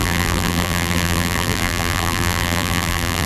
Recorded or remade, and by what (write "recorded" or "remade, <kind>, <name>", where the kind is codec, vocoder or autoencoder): remade, vocoder, BigVGAN v2